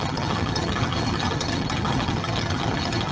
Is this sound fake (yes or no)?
yes